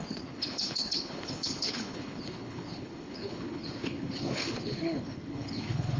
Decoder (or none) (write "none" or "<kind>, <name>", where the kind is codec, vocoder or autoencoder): codec, HILCodec